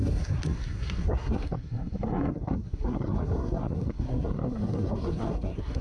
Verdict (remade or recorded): remade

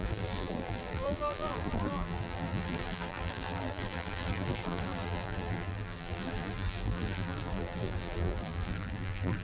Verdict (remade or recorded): remade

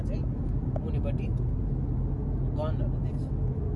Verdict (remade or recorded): recorded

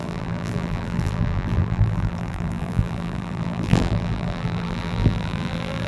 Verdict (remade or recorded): remade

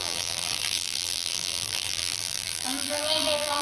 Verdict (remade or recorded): remade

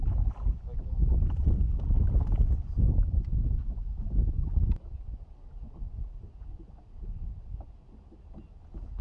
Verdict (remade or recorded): recorded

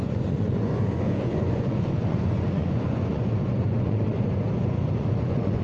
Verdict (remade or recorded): remade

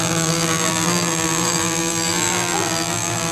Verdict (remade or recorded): remade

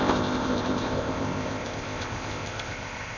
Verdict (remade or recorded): remade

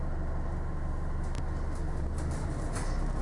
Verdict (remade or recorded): recorded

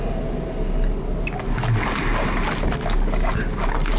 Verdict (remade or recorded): recorded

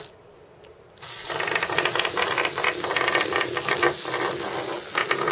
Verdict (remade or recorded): recorded